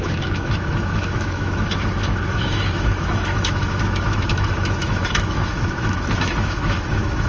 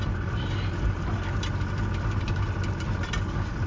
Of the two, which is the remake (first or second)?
first